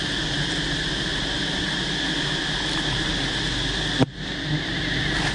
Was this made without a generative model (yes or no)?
yes